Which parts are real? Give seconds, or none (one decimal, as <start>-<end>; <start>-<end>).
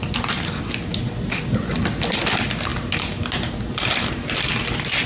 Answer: 0.0-5.1